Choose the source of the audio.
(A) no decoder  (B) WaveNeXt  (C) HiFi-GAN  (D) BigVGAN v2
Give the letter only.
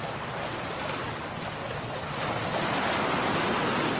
A